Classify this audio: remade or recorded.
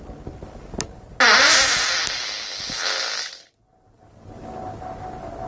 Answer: recorded